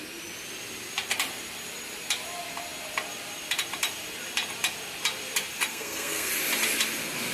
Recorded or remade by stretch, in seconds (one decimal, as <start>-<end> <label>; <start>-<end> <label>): 0.0-5.7 recorded; 5.7-6.3 remade; 6.3-7.3 recorded